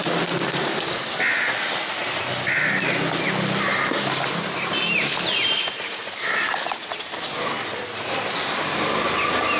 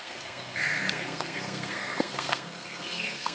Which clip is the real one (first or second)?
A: first